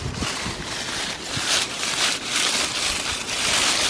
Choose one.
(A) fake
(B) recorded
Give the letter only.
B